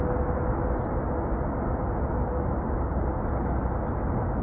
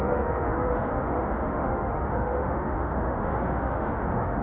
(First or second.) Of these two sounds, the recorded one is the first